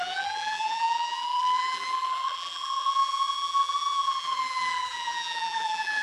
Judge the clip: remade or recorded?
remade